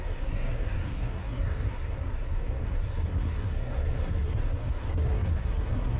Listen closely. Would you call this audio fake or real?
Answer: fake